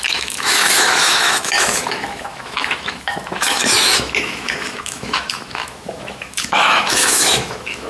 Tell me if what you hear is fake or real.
fake